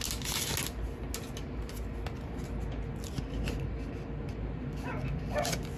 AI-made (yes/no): no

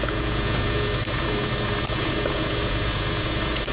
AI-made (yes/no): yes